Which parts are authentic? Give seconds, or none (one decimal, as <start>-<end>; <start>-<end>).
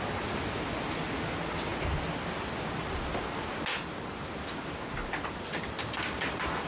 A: 0.0-6.7